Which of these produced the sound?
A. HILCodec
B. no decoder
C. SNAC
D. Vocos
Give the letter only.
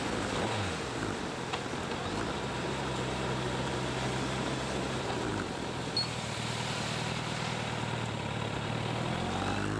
B